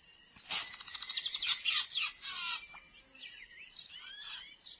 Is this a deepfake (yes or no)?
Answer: yes